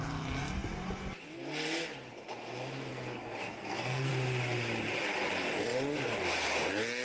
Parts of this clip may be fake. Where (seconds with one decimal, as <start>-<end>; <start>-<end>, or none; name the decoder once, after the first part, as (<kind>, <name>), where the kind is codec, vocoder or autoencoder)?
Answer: 2.9-4.1 (codec, SNAC)